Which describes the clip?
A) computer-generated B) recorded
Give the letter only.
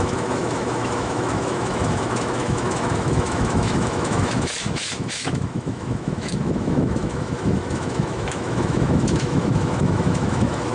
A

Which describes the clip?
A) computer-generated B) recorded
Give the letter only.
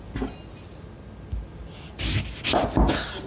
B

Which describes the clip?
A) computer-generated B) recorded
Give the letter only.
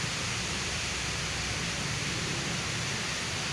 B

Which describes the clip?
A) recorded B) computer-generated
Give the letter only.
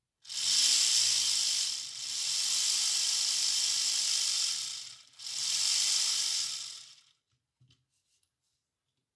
A